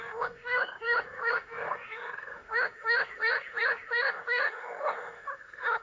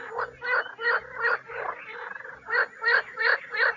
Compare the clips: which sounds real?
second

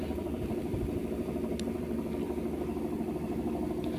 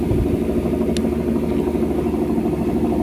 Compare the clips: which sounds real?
second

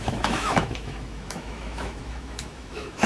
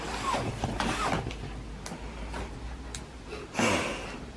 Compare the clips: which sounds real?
second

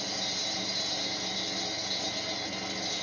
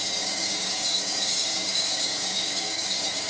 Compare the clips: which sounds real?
first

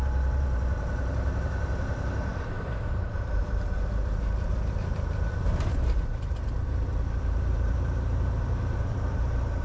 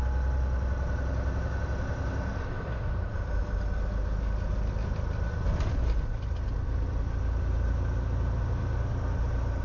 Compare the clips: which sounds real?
second